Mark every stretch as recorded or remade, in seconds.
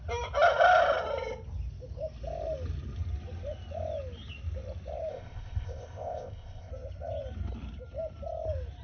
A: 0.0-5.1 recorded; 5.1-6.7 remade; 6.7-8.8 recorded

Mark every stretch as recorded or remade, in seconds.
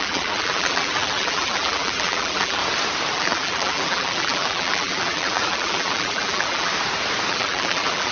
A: 0.0-2.6 remade; 2.6-3.1 recorded; 3.1-6.7 remade; 6.7-7.3 recorded; 7.3-8.1 remade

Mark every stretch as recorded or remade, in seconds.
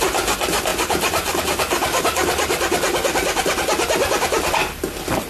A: 0.0-5.3 remade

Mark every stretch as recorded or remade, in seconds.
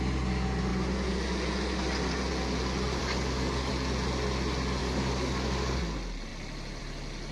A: 0.0-3.0 recorded; 3.0-3.7 remade; 3.7-4.8 recorded; 4.8-5.8 remade; 5.8-7.3 recorded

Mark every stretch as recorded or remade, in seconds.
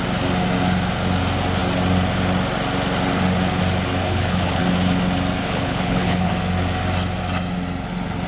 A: 0.0-4.0 recorded; 4.0-4.6 remade; 4.6-5.4 recorded; 5.4-6.3 remade; 6.3-8.3 recorded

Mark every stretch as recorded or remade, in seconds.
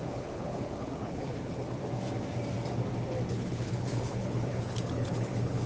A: 0.0-1.8 remade; 1.8-3.3 recorded; 3.3-5.7 remade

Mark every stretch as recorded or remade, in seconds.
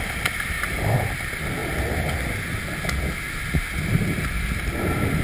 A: 0.0-5.2 recorded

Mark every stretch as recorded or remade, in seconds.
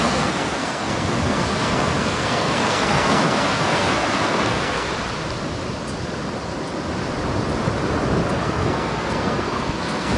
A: 0.0-4.9 remade; 4.9-8.3 recorded; 8.3-10.2 remade